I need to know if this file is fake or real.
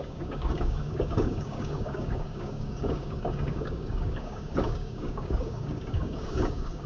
fake